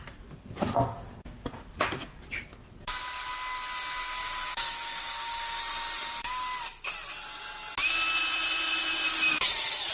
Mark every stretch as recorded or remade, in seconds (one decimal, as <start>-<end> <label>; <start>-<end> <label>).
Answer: 0.0-4.2 recorded; 4.2-5.6 remade; 5.6-9.9 recorded